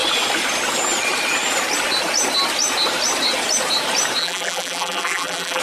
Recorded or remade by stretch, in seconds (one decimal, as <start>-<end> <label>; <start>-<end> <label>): 0.0-4.2 recorded; 4.2-5.6 remade